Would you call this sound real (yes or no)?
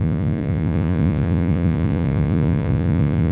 no